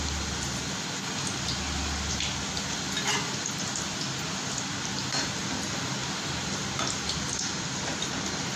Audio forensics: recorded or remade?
recorded